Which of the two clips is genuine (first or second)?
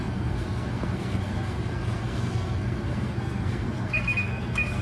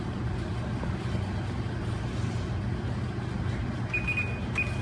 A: second